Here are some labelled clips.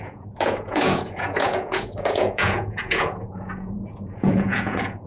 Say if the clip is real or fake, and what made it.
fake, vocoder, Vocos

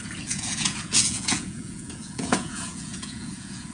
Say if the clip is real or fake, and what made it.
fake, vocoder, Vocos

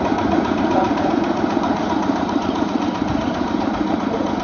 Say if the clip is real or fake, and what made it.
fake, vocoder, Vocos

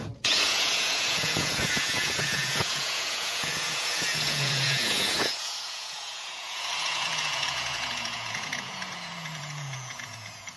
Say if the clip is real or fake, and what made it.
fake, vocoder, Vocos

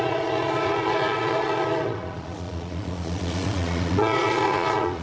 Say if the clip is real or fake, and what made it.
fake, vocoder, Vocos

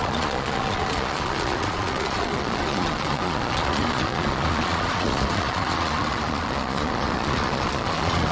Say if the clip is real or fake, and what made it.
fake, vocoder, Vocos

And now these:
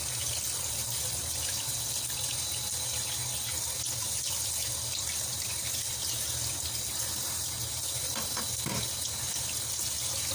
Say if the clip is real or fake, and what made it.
real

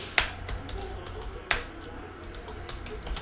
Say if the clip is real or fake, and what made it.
real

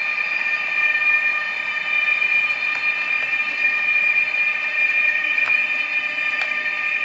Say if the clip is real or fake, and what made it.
real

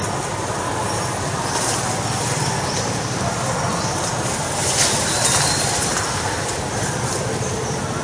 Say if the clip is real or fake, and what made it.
real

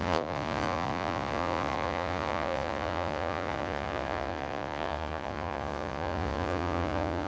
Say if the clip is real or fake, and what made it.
fake, vocoder, Vocos